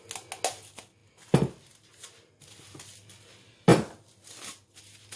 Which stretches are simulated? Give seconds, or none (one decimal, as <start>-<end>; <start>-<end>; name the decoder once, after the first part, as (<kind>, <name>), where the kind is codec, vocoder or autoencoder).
none